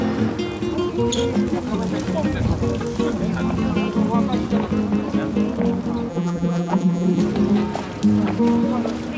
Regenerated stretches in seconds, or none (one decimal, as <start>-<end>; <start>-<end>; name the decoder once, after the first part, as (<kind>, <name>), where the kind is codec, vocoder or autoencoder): 6.1-7.2 (vocoder, BigVGAN v2)